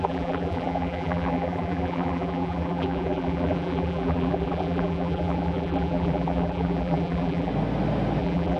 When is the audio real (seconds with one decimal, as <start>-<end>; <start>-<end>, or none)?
7.5-8.2